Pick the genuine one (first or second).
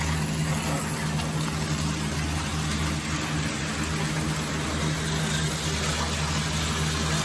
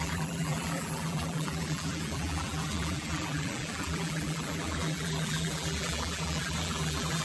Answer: first